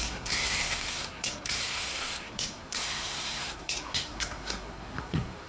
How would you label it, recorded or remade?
remade